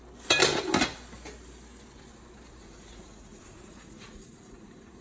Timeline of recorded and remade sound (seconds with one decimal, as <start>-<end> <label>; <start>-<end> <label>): 0.0-2.6 recorded; 2.6-5.0 remade